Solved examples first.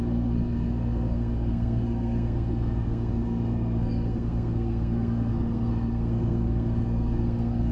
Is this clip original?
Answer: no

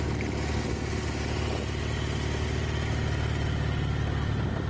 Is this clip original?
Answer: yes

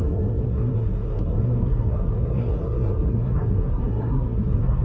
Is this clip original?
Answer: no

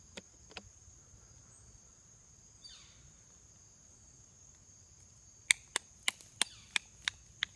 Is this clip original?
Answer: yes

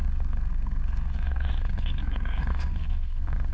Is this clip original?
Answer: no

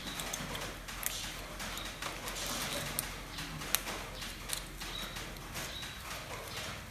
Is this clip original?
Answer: yes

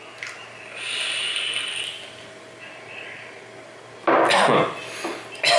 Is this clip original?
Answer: yes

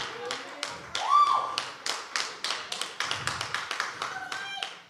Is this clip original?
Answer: yes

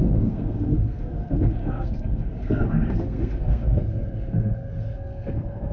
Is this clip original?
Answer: no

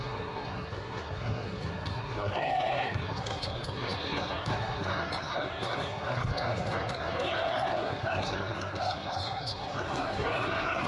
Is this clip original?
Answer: no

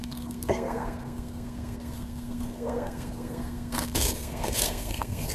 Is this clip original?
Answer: no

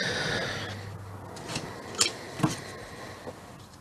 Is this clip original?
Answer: yes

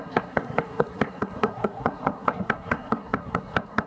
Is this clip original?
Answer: no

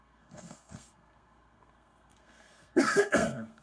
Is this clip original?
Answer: no